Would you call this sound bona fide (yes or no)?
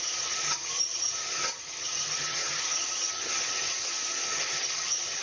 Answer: no